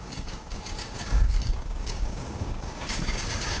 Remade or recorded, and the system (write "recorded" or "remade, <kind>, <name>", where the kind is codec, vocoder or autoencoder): remade, codec, DAC